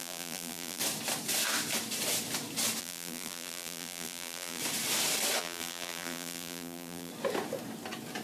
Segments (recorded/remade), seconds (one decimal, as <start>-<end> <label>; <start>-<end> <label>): 0.0-0.8 remade; 0.8-2.8 recorded; 2.8-4.6 remade; 4.6-5.4 recorded; 5.4-7.1 remade; 7.1-8.2 recorded